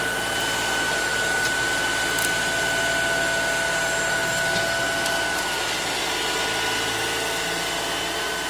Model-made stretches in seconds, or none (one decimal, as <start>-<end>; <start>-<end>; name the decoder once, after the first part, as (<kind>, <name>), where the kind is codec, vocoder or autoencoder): none